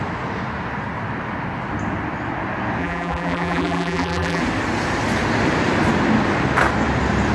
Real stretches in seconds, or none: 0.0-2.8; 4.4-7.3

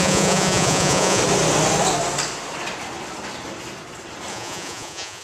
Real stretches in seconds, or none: 1.2-4.3